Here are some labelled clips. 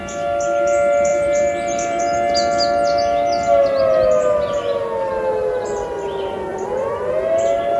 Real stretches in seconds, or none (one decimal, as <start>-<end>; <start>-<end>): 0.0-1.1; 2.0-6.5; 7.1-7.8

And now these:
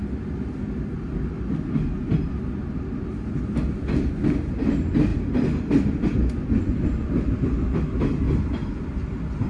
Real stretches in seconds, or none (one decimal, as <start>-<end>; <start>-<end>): 0.0-5.1; 7.1-9.5

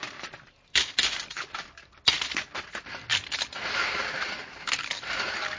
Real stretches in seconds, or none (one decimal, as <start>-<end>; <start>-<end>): 0.0-3.1; 3.7-5.6